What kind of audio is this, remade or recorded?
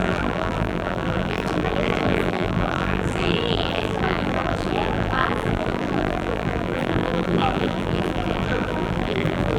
remade